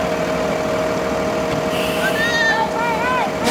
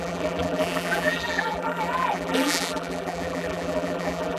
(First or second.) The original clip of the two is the first